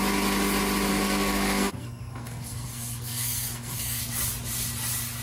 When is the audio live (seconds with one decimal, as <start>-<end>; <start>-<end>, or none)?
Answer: 0.0-0.9; 4.0-5.2